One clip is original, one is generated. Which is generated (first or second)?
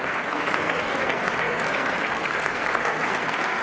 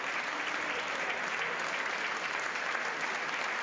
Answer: first